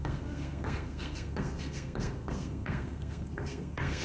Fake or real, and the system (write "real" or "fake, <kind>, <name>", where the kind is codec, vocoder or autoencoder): fake, codec, SNAC